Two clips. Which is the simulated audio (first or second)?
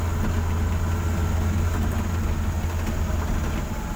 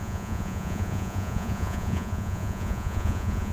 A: second